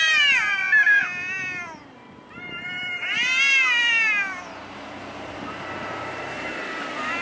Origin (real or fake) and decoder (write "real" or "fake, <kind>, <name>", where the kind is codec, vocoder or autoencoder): fake, vocoder, BigVGAN v2